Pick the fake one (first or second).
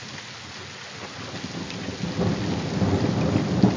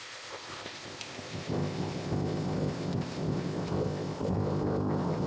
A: second